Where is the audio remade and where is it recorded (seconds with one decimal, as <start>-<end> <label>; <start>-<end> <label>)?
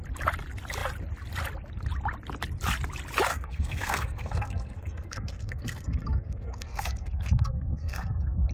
0.0-3.3 recorded; 3.3-8.5 remade